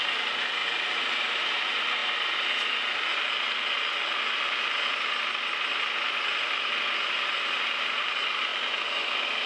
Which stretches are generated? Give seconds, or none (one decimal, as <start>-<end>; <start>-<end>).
0.0-2.0; 7.3-8.5